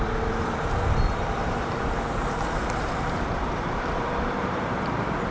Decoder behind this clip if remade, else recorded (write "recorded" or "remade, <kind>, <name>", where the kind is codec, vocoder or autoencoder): remade, vocoder, BigVGAN v2